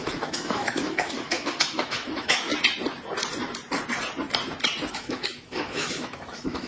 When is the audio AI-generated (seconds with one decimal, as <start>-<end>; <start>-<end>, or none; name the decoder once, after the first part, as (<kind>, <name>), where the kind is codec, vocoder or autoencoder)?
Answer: 0.0-2.5 (autoencoder, DAC-VAE); 4.9-6.7

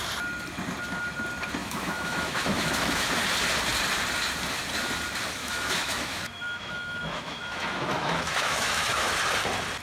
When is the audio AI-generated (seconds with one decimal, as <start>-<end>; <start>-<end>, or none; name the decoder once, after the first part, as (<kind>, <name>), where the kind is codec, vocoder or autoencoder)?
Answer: 1.6-3.1 (autoencoder, DAC-VAE); 5.4-9.2

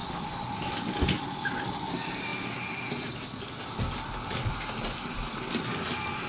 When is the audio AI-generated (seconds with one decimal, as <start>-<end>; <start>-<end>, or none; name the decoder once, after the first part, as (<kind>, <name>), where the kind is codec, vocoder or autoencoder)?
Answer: none

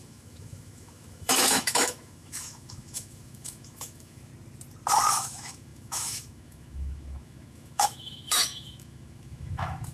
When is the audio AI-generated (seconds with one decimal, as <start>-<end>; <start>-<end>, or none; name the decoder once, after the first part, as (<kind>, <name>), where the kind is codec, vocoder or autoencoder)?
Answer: 0.0-4.3 (autoencoder, DAC-VAE); 5.1-9.9

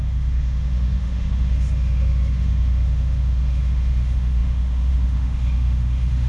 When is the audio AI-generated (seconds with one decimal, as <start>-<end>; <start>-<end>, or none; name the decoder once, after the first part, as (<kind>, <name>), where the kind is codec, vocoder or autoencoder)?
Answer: 0.0-6.3 (autoencoder, DAC-VAE)

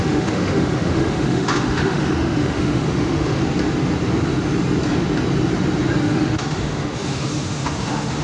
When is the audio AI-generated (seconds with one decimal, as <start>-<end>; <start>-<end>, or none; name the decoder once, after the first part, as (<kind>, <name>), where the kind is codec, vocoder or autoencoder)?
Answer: 0.0-3.4 (autoencoder, DAC-VAE); 6.0-8.2